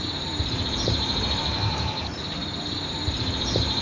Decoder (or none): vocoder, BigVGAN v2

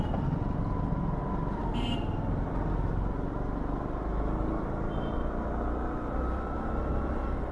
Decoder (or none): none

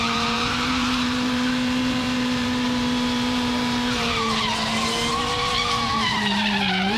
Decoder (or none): vocoder, BigVGAN v2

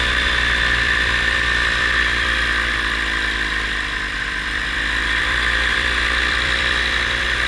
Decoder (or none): vocoder, BigVGAN v2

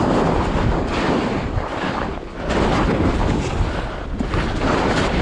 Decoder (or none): vocoder, BigVGAN v2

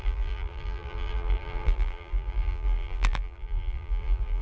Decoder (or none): vocoder, BigVGAN v2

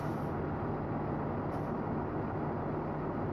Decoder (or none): none